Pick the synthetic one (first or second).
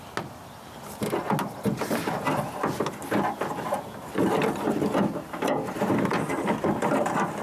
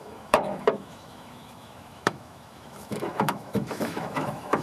second